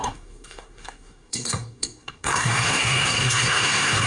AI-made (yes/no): yes